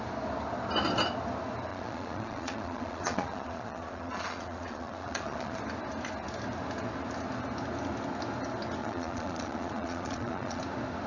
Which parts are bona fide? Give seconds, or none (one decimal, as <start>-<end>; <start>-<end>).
0.0-1.7; 5.6-8.8; 10.6-11.1